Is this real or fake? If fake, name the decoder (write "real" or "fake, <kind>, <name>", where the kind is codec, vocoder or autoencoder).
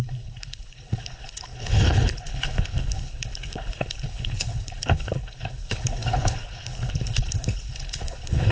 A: fake, codec, HILCodec